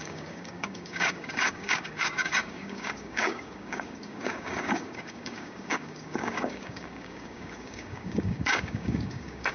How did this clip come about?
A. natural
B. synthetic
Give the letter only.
B